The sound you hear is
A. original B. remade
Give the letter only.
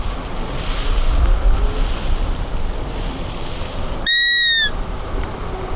A